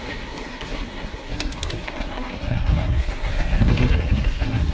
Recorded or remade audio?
remade